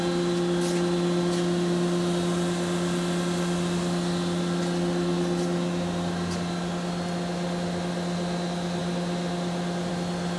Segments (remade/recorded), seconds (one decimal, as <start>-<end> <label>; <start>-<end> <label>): 0.0-10.4 recorded